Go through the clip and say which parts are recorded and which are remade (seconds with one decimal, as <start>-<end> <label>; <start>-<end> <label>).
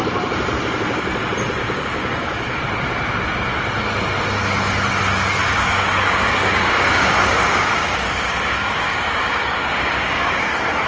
0.0-1.6 recorded; 1.6-2.6 remade; 2.6-5.4 recorded; 5.4-10.5 remade; 10.5-10.9 recorded